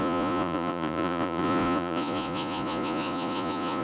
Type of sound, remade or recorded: remade